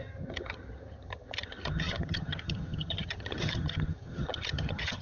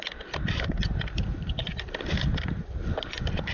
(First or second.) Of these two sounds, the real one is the second